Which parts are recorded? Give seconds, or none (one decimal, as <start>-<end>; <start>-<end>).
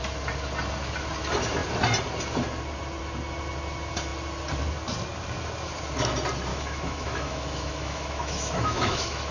0.0-6.5